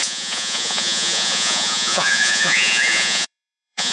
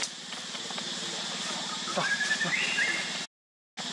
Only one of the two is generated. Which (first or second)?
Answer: first